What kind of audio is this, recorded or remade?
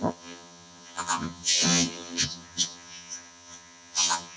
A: remade